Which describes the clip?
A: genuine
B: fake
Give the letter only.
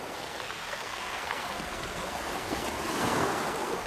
B